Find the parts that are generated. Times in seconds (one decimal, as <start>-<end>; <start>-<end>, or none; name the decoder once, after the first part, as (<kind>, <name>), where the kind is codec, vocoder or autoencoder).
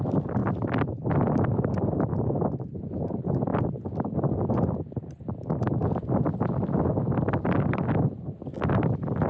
none